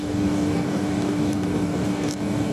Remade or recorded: remade